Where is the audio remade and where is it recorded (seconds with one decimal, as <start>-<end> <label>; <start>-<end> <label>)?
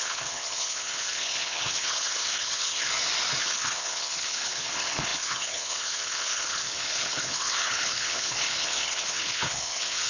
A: 0.0-2.9 remade; 2.9-3.4 recorded; 3.4-10.1 remade